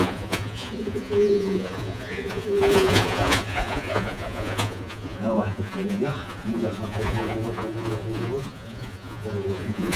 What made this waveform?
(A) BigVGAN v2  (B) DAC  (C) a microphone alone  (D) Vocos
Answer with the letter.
D